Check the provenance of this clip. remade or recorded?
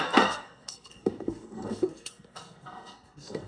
remade